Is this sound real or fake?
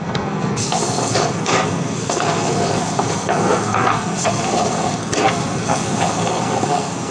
fake